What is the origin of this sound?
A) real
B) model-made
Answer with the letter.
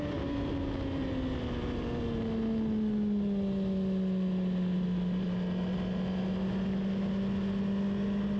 A